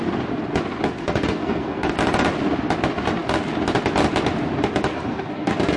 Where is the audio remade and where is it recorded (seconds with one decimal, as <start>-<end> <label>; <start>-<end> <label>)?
0.0-1.0 recorded; 1.0-1.9 remade; 1.9-4.9 recorded; 4.9-5.8 remade